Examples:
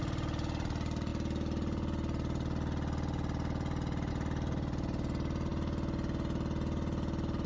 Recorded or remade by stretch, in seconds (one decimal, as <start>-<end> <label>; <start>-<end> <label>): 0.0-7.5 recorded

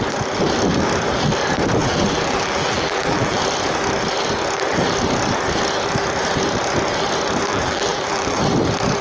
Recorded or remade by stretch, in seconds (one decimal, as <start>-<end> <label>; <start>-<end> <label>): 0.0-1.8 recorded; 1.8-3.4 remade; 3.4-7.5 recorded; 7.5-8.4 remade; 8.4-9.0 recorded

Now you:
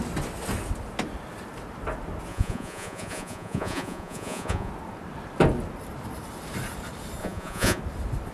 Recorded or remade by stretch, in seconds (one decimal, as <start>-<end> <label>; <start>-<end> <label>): 0.0-2.3 recorded; 2.3-4.7 remade; 4.7-7.2 recorded; 7.2-7.8 remade; 7.8-8.3 recorded

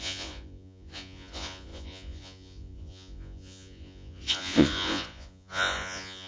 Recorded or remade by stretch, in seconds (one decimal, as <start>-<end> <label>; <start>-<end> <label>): 0.0-6.3 remade